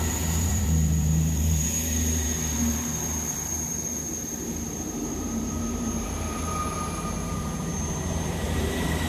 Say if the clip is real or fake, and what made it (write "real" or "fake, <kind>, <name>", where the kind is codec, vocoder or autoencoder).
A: fake, vocoder, BigVGAN v2